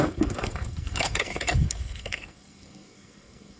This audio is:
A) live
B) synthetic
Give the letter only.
B